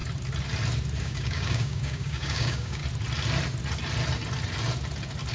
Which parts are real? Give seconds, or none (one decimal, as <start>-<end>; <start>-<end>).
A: 0.0-1.0; 2.8-5.3